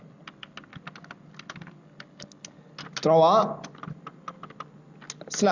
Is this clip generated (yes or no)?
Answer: no